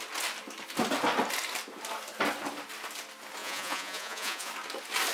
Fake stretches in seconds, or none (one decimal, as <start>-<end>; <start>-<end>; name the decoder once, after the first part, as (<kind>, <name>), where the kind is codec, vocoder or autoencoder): 3.4-4.5 (vocoder, Vocos)